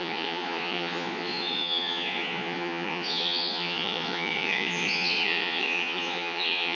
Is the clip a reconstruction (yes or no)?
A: yes